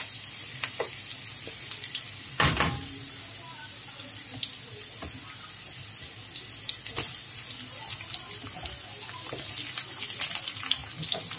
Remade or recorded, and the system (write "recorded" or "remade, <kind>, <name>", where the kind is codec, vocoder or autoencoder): recorded